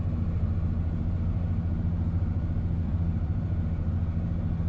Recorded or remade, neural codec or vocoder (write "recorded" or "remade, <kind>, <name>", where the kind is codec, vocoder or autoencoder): remade, vocoder, BigVGAN v2